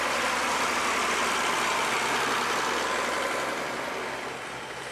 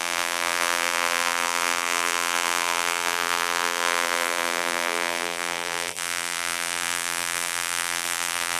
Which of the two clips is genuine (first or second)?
first